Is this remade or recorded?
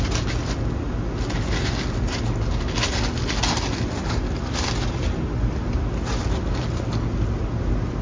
recorded